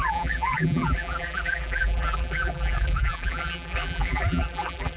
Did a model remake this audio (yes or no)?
yes